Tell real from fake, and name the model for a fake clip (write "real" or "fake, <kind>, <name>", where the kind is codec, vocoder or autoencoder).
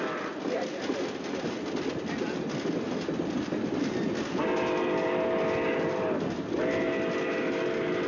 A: real